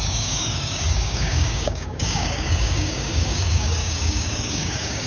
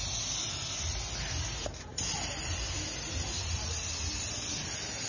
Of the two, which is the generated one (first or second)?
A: first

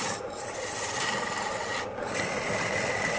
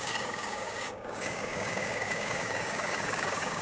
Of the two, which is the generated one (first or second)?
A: second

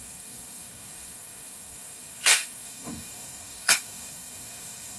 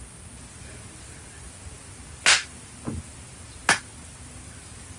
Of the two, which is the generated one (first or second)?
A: first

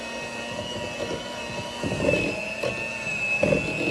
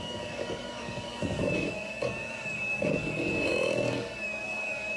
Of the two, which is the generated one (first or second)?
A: second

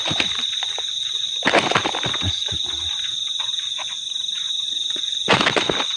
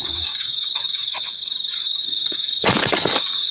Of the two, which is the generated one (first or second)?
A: second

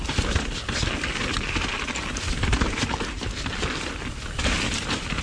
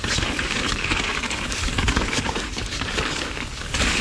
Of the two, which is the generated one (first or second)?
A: second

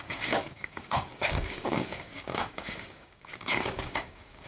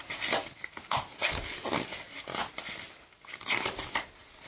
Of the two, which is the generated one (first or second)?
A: first